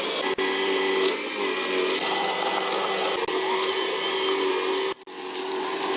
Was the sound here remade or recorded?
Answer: recorded